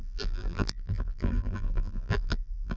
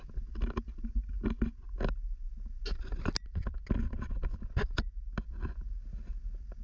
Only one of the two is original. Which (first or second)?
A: second